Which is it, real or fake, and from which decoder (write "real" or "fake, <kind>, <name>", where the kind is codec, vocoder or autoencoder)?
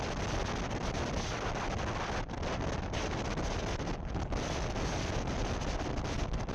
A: real